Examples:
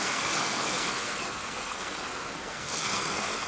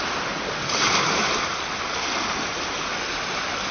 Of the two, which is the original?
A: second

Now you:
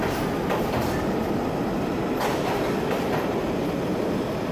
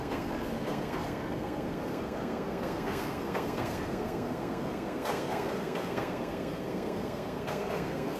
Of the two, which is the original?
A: first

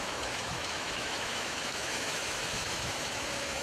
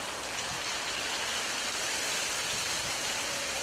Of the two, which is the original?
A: second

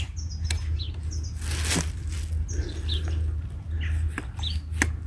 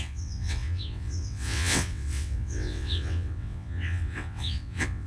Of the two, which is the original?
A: first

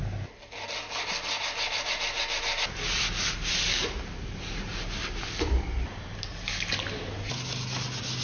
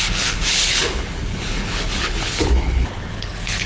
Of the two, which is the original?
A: first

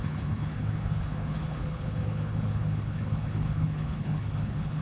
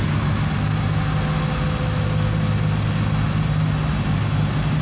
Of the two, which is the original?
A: second